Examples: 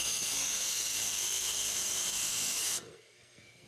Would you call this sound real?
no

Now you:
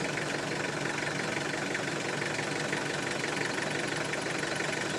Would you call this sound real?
yes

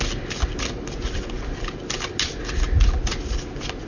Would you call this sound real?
yes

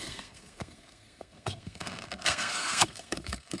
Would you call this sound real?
no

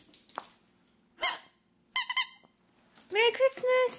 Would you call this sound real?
yes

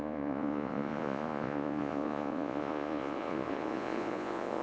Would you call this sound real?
no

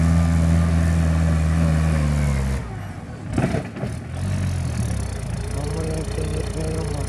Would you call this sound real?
yes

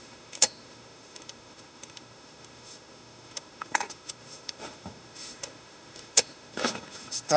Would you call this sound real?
no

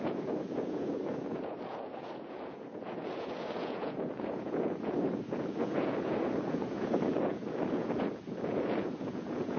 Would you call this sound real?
no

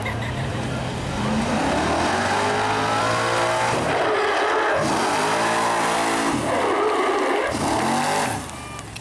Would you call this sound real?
yes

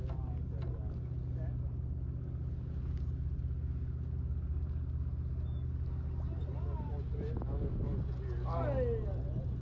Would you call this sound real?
yes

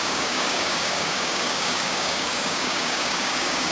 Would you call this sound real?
no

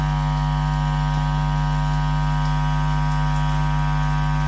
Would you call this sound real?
yes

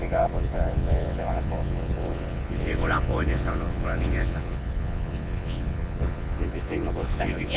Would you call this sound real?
no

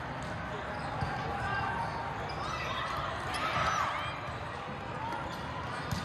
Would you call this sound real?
yes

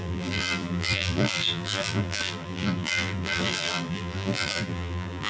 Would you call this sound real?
no